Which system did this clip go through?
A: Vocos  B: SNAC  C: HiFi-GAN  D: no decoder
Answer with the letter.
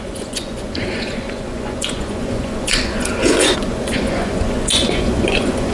A